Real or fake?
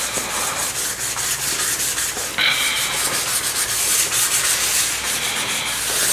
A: real